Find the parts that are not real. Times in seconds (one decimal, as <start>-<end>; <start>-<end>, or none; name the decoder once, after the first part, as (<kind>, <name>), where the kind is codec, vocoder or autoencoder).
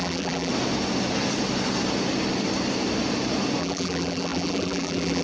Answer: 0.0-0.5 (vocoder, BigVGAN v2); 3.6-5.2